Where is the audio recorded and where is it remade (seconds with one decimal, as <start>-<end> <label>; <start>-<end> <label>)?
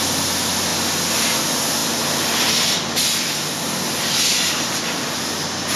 0.0-5.8 recorded